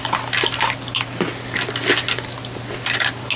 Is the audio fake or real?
real